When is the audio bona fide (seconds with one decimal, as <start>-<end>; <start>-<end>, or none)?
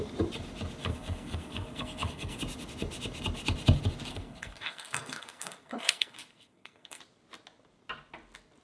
0.0-0.8; 2.4-4.1; 7.0-8.6